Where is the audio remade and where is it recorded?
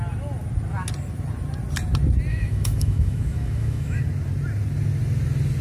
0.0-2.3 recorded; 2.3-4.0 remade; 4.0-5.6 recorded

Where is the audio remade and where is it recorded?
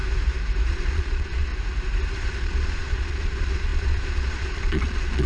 0.0-0.7 recorded; 0.7-1.5 remade; 1.5-2.4 recorded; 2.4-5.3 remade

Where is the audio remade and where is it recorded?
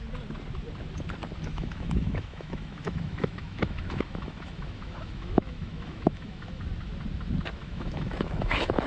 0.0-1.5 recorded; 1.5-6.6 remade; 6.6-7.6 recorded; 7.6-8.9 remade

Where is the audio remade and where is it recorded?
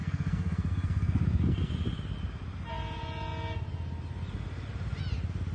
0.0-1.7 remade; 1.7-5.5 recorded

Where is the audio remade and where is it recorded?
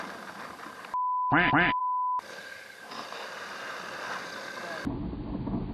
0.0-5.7 recorded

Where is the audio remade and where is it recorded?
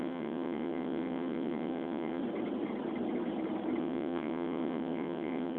0.0-2.2 remade; 2.2-3.8 recorded; 3.8-5.6 remade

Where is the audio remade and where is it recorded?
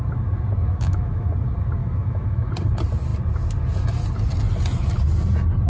0.0-0.6 recorded; 0.6-1.3 remade; 1.3-1.8 recorded; 1.8-2.5 remade; 2.5-5.7 recorded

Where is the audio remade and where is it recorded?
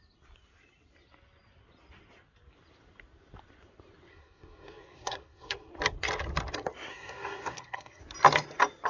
0.0-4.1 recorded; 4.1-5.7 remade; 5.7-6.9 recorded; 6.9-8.0 remade; 8.0-8.9 recorded